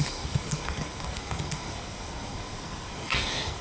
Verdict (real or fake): fake